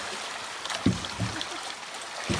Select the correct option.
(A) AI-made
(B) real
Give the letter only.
B